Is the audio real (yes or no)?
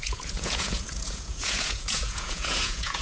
no